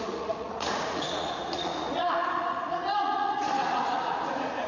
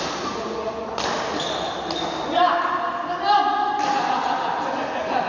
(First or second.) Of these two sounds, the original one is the second